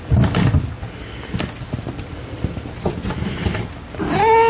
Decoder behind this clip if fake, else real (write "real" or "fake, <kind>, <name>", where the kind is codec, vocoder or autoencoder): real